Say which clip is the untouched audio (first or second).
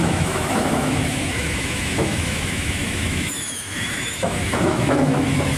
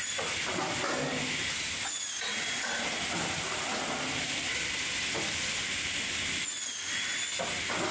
second